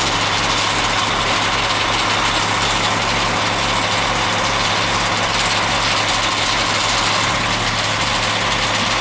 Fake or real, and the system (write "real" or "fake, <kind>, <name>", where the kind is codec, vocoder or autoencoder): real